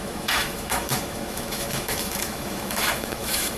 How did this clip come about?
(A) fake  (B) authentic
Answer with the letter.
A